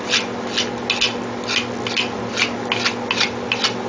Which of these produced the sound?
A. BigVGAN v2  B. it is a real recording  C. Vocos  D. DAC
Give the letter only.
B